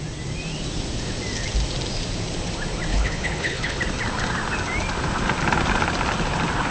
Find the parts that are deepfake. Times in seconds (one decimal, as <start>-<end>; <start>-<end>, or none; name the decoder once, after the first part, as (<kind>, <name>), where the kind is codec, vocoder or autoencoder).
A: 2.9-3.8 (codec, HILCodec)